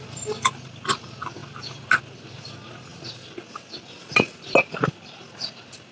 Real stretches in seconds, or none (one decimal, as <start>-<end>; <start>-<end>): 0.0-5.9